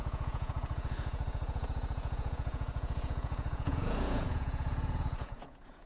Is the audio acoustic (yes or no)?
no